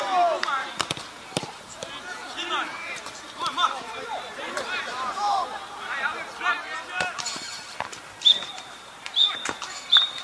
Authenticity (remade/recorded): remade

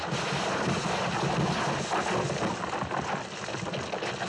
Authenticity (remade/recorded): recorded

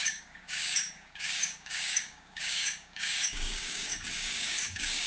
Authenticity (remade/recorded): remade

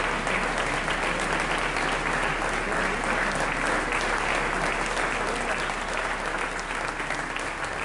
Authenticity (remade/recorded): recorded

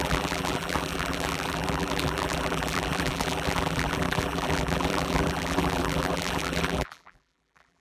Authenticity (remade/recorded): remade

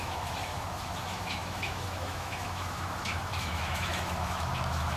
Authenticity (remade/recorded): remade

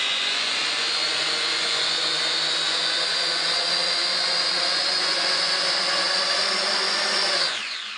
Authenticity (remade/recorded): remade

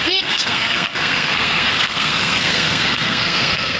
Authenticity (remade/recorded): remade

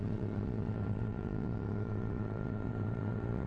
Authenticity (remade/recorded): remade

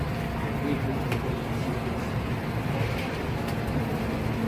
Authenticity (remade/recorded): recorded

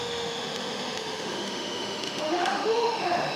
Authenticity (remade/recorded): remade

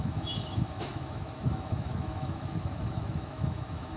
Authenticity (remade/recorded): remade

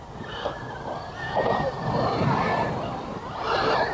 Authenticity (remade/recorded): recorded